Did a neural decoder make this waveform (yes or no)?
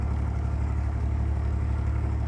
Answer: yes